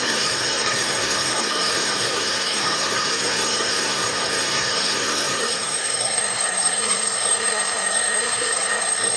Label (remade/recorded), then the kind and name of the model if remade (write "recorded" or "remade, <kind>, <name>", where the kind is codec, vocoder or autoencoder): remade, codec, SNAC